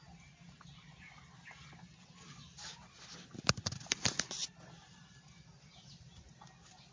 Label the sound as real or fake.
real